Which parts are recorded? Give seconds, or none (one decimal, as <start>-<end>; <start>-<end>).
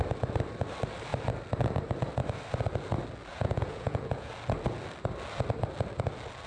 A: 0.0-3.3; 4.3-6.5